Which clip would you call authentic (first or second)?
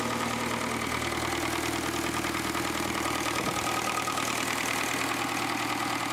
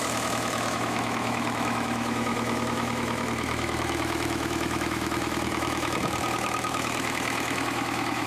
first